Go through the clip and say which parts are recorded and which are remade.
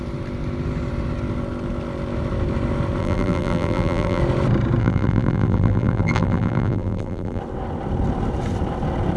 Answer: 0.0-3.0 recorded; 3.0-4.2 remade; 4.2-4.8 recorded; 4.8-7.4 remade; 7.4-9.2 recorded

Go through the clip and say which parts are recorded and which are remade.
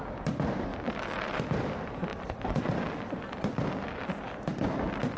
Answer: 0.0-5.2 remade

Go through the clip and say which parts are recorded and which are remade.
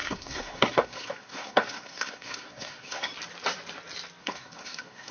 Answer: 0.0-3.1 remade; 3.1-4.2 recorded; 4.2-5.1 remade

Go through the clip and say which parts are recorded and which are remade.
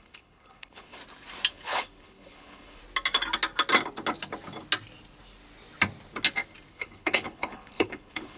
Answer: 0.0-1.0 remade; 1.0-1.5 recorded; 1.5-2.8 remade; 2.8-6.7 recorded; 6.7-8.4 remade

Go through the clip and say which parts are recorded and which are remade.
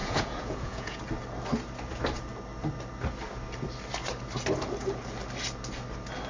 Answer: 0.0-1.0 remade; 1.0-6.3 recorded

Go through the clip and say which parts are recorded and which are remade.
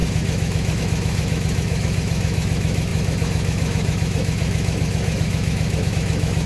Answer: 0.0-6.5 remade